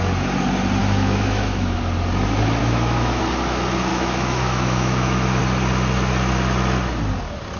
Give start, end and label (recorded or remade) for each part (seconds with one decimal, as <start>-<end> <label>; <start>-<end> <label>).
0.0-0.8 recorded; 0.8-1.8 remade; 1.8-2.6 recorded; 2.6-3.2 remade; 3.2-3.9 recorded; 3.9-5.4 remade; 5.4-7.6 recorded